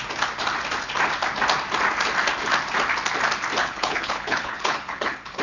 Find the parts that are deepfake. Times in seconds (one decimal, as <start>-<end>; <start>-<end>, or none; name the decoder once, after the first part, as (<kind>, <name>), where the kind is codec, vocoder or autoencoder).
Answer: 3.6-5.4 (codec, HILCodec)